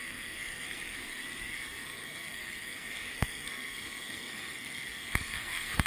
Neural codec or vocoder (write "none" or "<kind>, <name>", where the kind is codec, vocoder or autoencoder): codec, SNAC